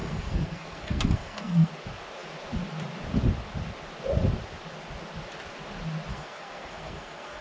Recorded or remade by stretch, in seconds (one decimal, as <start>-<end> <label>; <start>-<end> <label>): 0.0-1.7 remade; 1.7-6.1 recorded; 6.1-7.4 remade